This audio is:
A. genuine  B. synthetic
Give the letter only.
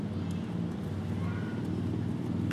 A